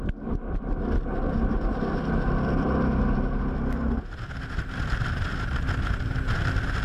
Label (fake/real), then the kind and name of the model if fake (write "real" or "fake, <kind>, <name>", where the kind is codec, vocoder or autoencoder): real